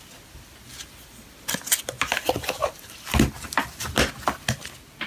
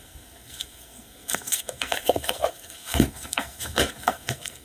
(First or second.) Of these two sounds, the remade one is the second